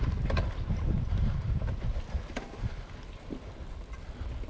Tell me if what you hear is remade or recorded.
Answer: recorded